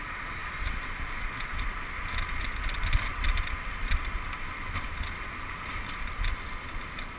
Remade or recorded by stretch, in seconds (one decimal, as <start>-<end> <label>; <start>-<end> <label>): 0.0-7.2 recorded